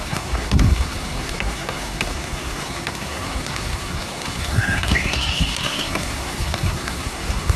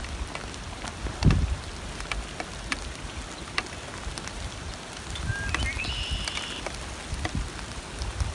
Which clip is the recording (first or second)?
second